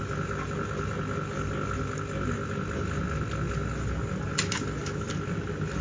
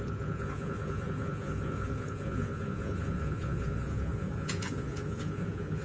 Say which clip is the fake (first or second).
second